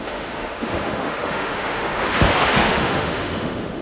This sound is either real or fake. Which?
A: fake